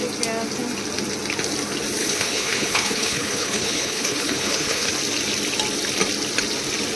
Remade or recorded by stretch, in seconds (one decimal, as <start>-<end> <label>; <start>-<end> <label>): 0.0-2.0 recorded; 2.0-4.9 remade; 4.9-7.0 recorded